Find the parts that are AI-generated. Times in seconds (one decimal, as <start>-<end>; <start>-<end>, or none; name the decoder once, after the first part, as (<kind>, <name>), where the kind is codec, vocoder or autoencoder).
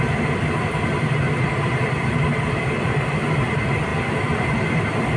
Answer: none